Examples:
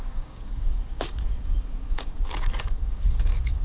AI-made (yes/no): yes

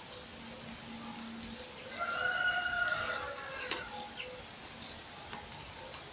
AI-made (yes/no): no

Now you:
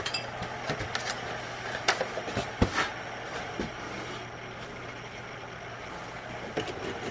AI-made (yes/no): no